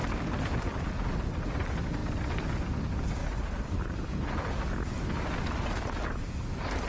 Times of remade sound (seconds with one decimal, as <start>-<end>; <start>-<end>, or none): none